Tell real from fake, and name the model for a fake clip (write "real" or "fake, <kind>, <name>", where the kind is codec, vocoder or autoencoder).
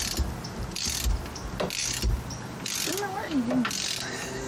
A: real